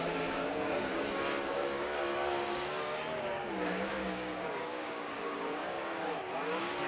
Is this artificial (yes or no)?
yes